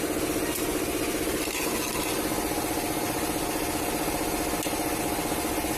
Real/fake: real